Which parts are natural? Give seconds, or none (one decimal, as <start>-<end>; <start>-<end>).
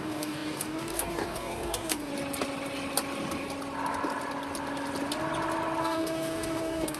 2.1-5.8